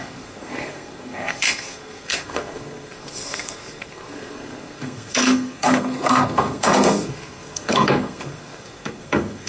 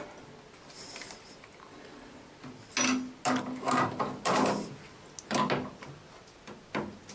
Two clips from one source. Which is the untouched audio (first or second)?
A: second